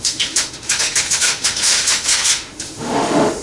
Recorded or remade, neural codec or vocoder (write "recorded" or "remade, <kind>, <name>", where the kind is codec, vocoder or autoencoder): remade, autoencoder, DAC-VAE